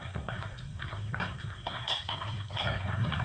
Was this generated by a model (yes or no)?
yes